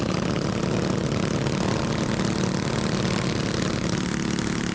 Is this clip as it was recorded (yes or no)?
yes